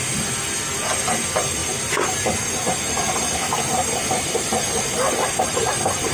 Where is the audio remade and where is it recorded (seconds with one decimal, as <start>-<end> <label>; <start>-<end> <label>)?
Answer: 0.0-4.0 recorded; 4.0-6.1 remade